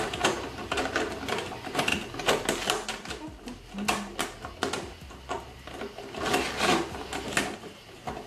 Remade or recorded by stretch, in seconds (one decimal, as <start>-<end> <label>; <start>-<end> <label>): 0.0-8.3 recorded